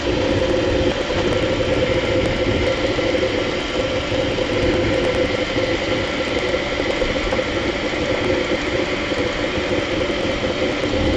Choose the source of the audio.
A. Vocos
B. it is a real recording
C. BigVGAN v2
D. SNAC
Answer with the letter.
B